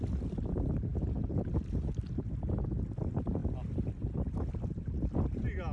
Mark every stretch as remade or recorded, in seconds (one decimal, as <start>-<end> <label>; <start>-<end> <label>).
0.0-5.7 recorded